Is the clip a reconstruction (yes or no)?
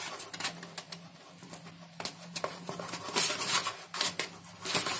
no